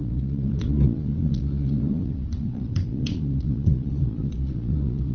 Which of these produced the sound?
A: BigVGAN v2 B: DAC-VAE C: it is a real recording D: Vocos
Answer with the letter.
D